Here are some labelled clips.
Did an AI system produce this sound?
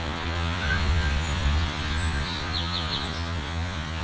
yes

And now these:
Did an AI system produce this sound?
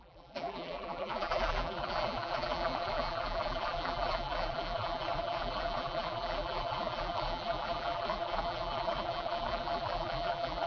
yes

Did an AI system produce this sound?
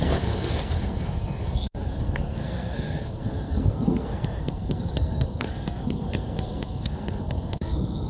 yes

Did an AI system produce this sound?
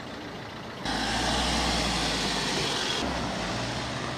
no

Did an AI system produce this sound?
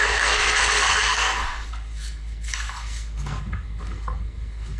yes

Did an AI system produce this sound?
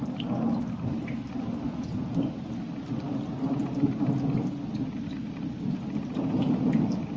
no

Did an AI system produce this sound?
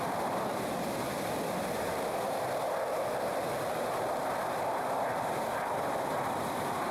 yes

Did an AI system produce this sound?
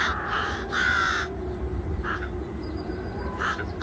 yes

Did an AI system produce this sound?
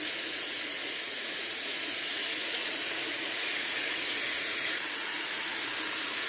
yes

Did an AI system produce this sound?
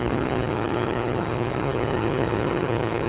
yes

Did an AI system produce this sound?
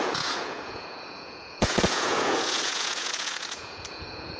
yes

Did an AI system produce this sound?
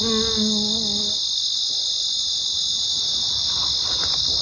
no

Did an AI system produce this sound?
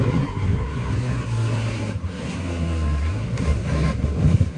yes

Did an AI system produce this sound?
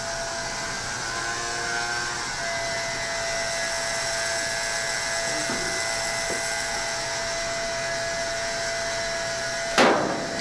no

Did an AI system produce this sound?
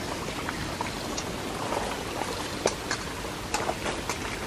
no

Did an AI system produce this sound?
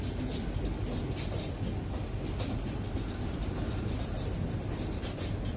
no